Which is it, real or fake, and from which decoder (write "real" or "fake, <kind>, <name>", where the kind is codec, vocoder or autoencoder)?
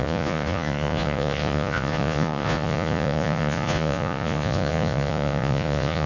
fake, vocoder, Vocos